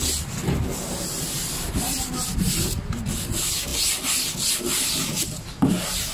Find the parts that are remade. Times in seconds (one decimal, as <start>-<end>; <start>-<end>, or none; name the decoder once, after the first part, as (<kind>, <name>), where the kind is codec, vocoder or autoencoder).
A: none